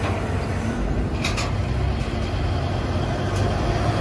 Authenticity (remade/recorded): recorded